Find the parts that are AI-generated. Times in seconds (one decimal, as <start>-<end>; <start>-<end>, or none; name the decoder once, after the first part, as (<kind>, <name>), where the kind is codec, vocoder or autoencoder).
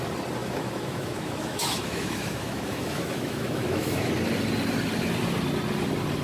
0.4-4.1 (autoencoder, DAC-VAE)